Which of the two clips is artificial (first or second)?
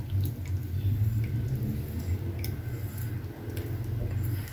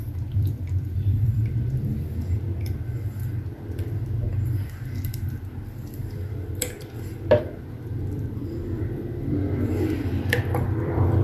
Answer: second